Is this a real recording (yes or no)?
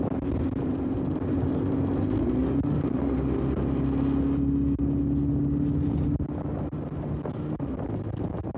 yes